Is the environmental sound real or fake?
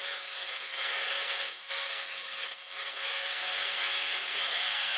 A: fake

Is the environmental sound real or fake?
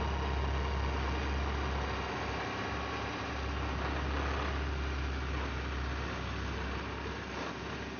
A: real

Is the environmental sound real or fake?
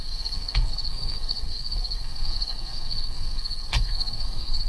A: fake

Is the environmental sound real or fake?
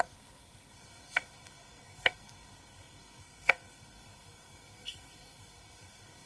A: fake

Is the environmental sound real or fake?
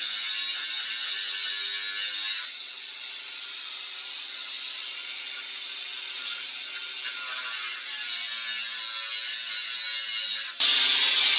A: real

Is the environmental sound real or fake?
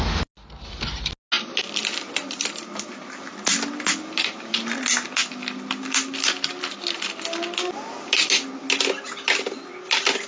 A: real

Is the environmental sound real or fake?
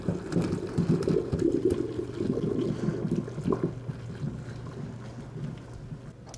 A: real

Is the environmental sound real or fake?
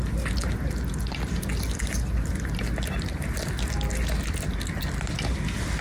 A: real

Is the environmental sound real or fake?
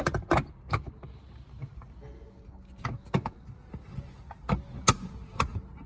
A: real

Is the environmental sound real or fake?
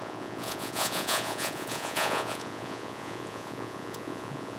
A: fake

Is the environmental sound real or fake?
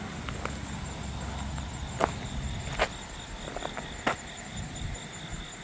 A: real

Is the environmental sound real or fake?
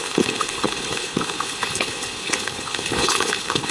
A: fake